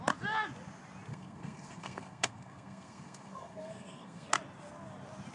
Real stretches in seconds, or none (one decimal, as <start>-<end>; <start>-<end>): 0.0-1.1; 4.3-5.3